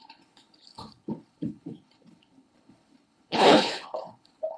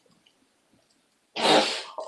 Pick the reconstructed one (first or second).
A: first